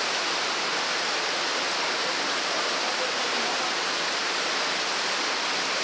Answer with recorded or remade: recorded